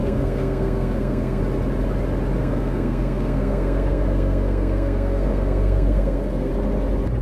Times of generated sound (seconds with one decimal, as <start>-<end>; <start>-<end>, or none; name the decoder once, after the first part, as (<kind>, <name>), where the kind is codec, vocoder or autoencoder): 0.0-1.4 (codec, SNAC); 2.4-6.5